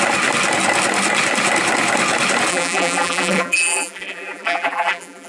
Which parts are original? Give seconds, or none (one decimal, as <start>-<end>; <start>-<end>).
0.0-2.5